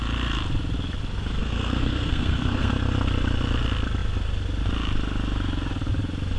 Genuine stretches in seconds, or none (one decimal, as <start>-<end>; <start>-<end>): 0.0-1.4; 2.7-6.4